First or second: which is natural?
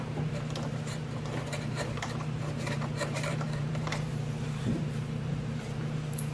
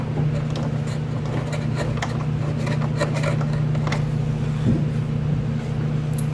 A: second